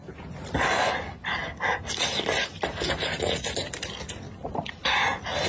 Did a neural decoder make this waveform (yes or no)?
no